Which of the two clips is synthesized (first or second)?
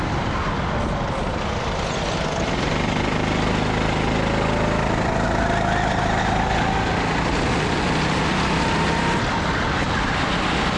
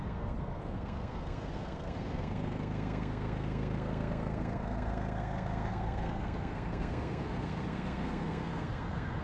second